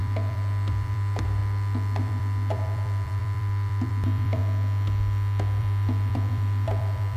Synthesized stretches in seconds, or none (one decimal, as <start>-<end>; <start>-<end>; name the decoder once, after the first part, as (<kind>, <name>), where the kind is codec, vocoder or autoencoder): 0.0-1.4 (vocoder, BigVGAN v2); 2.0-4.4; 5.6-7.2